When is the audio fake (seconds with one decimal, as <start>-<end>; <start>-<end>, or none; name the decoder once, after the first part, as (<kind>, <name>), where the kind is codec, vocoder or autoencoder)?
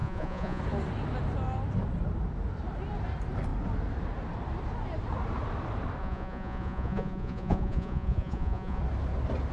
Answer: 0.0-0.6 (vocoder, Vocos); 6.0-8.8